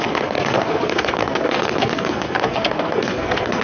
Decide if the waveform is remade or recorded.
remade